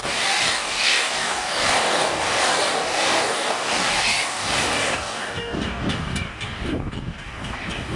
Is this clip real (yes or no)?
no